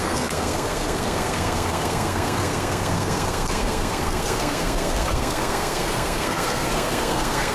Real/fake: fake